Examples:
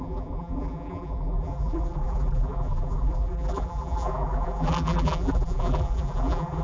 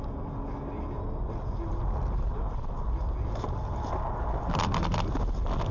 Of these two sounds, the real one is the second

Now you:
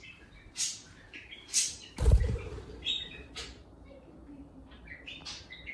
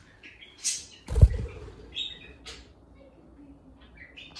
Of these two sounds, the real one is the second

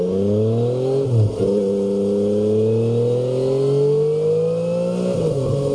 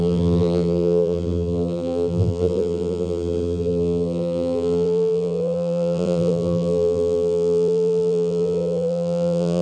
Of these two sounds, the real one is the first